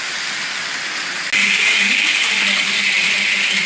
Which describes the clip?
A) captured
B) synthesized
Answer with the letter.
A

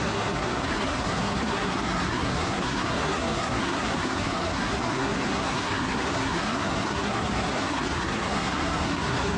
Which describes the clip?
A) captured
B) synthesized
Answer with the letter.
B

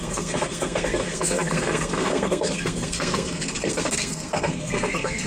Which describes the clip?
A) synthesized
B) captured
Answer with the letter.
A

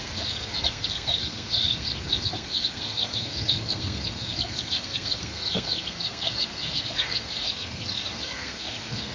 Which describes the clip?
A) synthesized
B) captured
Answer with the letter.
A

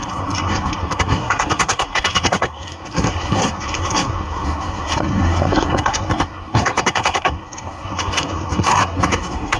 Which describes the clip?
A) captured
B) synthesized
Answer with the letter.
B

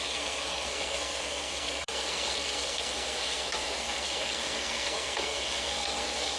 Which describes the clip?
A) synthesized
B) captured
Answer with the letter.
A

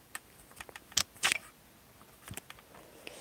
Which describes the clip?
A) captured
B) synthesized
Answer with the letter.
A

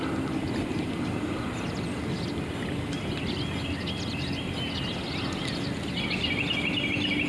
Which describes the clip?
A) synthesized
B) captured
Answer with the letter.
B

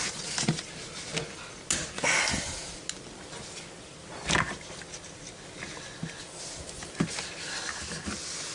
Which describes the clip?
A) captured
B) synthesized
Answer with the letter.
A